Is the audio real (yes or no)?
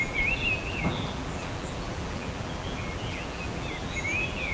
no